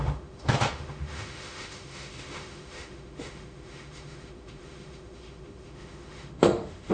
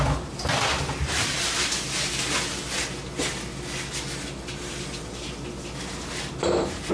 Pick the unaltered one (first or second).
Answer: second